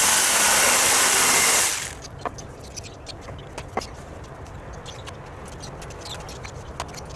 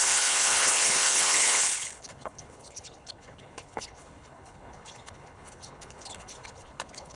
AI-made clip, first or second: second